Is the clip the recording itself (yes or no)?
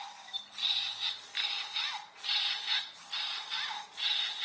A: yes